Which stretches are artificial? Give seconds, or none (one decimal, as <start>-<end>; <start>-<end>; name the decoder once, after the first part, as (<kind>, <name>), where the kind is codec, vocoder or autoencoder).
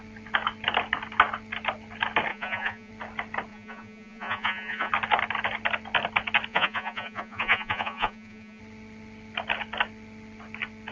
2.3-2.9 (vocoder, Vocos); 3.5-4.9; 6.5-8.6